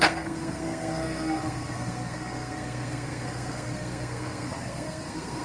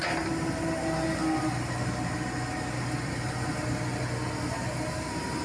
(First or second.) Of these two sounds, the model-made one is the first